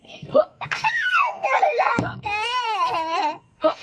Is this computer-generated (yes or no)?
yes